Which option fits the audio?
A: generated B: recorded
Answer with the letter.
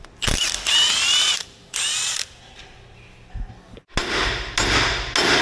B